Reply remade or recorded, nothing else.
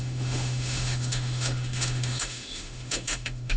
remade